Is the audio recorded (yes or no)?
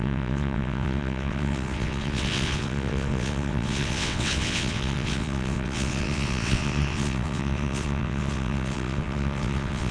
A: no